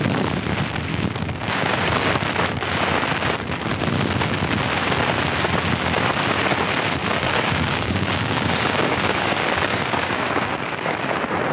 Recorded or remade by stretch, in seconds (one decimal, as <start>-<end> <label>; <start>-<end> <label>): 0.0-0.9 recorded; 0.9-2.1 remade; 2.1-7.0 recorded; 7.0-11.1 remade; 11.1-11.5 recorded